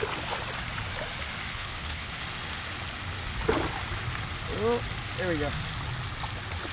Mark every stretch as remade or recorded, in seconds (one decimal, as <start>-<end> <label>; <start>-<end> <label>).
0.0-1.5 recorded; 1.5-2.1 remade; 2.1-6.7 recorded